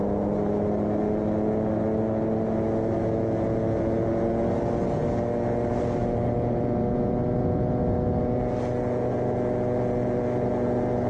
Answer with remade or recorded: recorded